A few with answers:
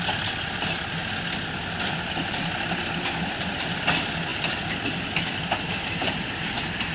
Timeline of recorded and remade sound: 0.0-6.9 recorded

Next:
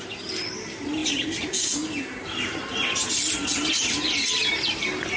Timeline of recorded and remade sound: 0.0-5.2 recorded

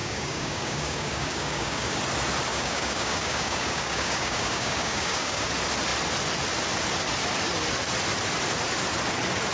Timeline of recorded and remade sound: 0.0-2.0 remade; 2.0-2.5 recorded; 2.5-5.5 remade; 5.5-9.5 recorded

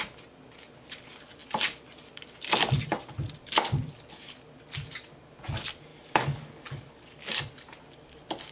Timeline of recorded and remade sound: 0.0-5.9 recorded; 5.9-7.5 remade; 7.5-8.5 recorded